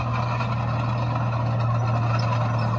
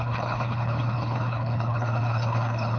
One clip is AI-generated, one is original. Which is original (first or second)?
first